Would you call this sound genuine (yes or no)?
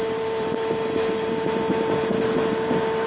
no